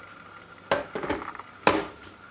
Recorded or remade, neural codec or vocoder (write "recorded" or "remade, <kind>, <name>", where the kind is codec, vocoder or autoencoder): recorded